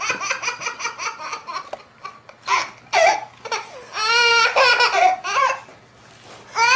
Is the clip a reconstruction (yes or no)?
no